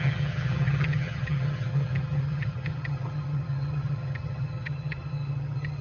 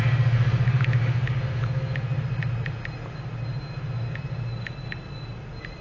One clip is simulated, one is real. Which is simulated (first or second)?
first